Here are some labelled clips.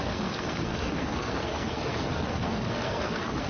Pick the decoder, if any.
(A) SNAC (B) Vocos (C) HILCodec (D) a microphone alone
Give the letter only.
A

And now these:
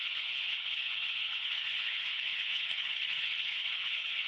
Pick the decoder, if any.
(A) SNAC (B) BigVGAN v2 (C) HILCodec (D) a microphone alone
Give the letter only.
C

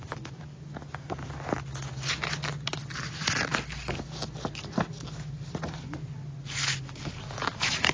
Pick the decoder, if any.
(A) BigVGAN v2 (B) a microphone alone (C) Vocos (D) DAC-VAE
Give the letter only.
B